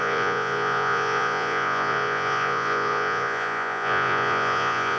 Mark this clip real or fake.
fake